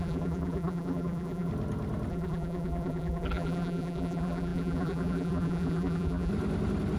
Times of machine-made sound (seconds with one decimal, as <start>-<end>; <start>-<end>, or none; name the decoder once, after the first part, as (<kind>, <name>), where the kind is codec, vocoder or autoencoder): 0.0-1.5 (vocoder, BigVGAN v2); 2.1-6.3